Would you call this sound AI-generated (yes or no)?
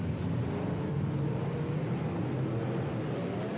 no